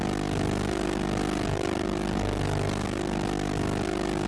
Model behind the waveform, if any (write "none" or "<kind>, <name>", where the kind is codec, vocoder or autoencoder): none